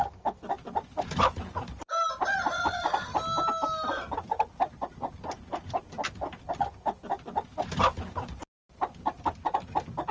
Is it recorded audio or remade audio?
recorded